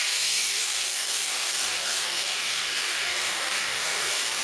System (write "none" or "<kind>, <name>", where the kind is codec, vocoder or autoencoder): codec, DAC